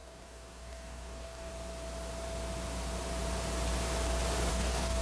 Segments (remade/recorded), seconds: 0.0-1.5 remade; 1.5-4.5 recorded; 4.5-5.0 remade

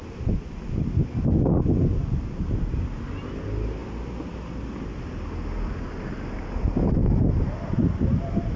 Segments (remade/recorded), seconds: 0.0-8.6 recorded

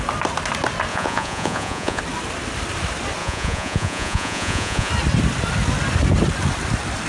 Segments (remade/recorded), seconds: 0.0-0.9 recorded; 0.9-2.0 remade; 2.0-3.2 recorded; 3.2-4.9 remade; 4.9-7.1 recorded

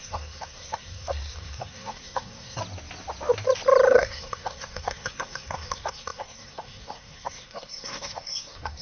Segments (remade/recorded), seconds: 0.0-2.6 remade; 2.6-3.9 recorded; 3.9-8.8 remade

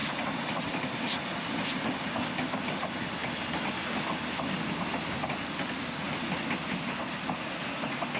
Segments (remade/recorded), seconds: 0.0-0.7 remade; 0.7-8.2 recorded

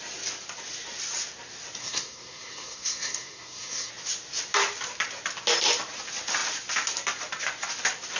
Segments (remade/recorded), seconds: 0.0-1.8 recorded; 1.8-3.9 remade; 3.9-8.2 recorded